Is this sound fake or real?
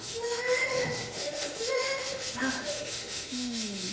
fake